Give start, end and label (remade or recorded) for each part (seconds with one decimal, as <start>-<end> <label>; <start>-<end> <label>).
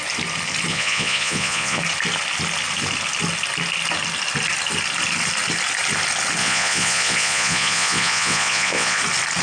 0.0-0.7 recorded; 0.7-1.8 remade; 1.8-6.4 recorded; 6.4-9.0 remade; 9.0-9.4 recorded